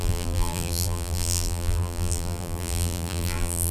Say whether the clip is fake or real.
fake